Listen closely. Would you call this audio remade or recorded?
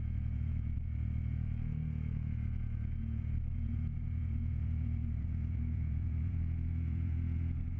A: remade